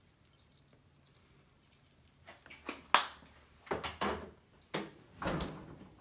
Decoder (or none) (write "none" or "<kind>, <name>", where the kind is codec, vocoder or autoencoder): none